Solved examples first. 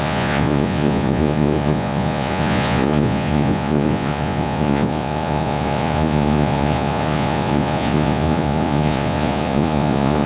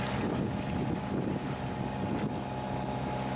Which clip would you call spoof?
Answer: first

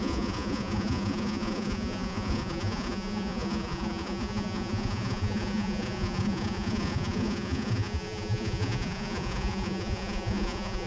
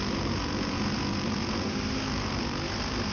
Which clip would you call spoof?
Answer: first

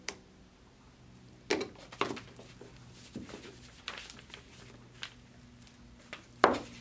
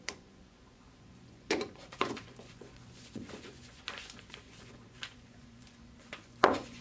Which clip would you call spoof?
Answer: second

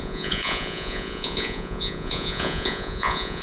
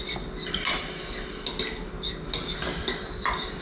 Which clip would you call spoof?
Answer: first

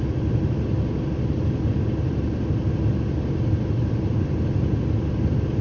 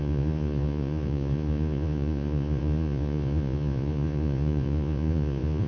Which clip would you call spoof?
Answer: second